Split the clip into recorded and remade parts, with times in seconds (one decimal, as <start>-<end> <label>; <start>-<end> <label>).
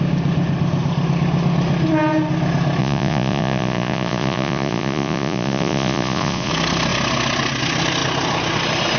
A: 0.0-2.8 recorded; 2.8-6.5 remade; 6.5-9.0 recorded